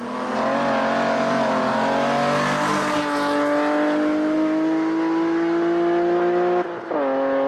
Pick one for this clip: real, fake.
real